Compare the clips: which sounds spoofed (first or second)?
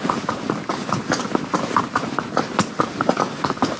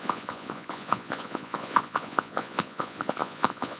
second